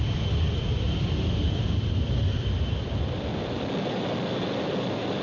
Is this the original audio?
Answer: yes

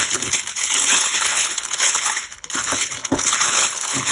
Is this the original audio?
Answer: no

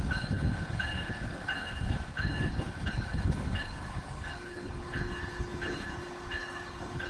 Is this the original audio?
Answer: no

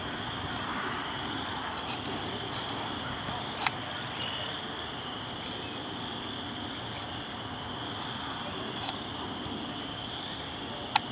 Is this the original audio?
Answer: yes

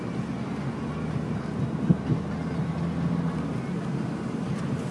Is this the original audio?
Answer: yes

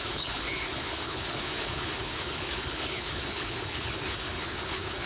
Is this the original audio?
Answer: no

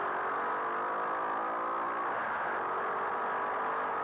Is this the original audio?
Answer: yes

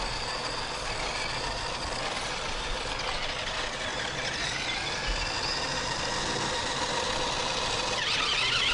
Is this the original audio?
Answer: yes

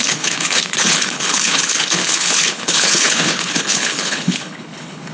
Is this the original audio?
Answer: no